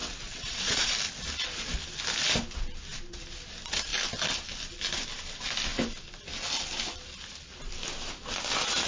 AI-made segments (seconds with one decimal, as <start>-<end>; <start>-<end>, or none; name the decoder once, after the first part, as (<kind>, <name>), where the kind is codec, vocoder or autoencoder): 0.0-0.9 (vocoder, WaveNeXt)